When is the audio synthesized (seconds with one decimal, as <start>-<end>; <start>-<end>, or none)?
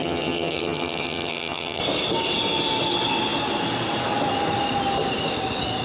0.0-1.8